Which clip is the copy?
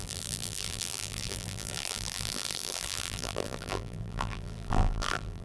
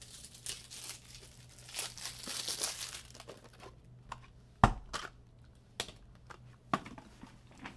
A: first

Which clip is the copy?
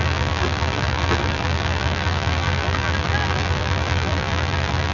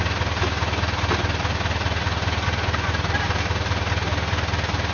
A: first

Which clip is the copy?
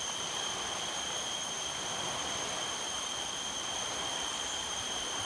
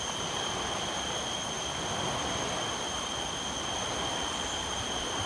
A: first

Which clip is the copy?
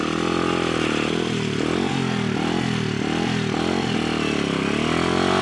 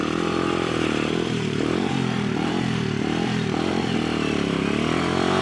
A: second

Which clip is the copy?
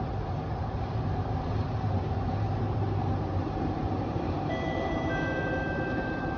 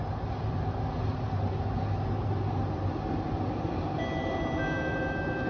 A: first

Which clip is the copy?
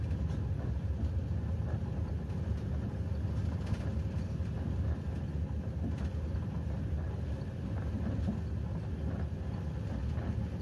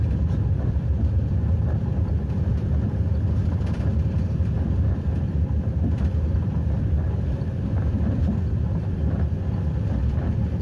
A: second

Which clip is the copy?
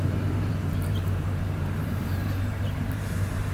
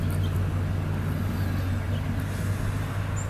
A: first